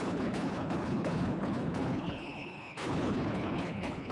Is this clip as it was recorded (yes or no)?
no